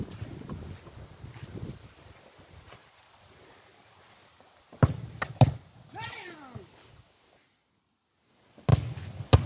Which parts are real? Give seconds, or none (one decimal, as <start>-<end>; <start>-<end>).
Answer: 0.0-9.5